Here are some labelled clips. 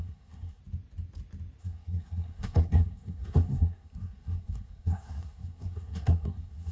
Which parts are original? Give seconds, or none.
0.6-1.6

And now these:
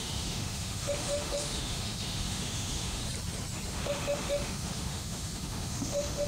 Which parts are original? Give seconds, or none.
3.0-3.7